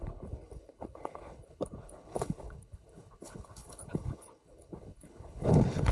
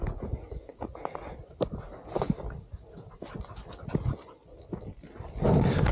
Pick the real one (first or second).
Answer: second